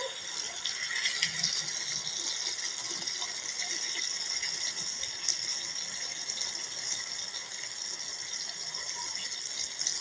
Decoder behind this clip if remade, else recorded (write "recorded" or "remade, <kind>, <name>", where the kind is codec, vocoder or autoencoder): recorded